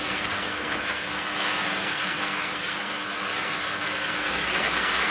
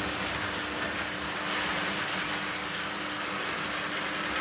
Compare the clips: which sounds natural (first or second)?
second